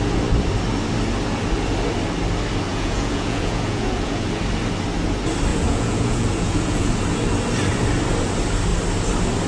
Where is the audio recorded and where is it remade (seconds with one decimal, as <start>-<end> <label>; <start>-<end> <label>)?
0.0-2.7 recorded; 2.7-4.4 remade; 4.4-5.5 recorded; 5.5-6.9 remade; 6.9-9.5 recorded